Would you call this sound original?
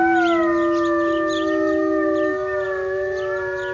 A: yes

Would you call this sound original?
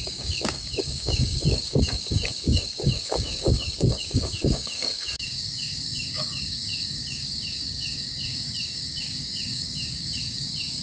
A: no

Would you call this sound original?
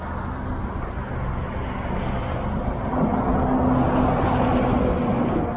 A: yes